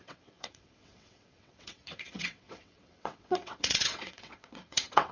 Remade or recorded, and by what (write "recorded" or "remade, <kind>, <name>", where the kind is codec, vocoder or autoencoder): remade, vocoder, WaveNeXt